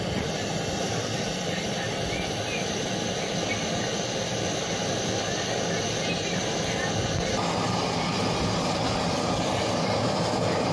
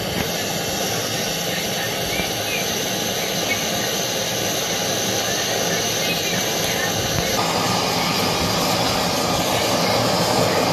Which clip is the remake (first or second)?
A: first